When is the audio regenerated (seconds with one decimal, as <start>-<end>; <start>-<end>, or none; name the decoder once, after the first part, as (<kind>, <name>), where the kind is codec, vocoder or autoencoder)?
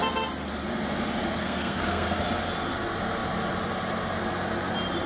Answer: 1.4-2.2 (codec, SNAC)